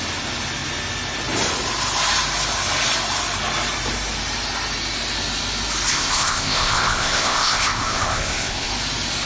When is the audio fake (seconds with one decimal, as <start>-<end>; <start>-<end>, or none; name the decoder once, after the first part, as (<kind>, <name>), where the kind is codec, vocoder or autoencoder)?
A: 5.9-8.7 (codec, ZipCodec)